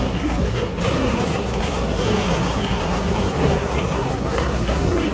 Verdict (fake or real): fake